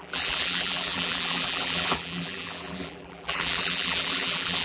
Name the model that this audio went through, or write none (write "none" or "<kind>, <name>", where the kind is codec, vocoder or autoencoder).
vocoder, BigVGAN v2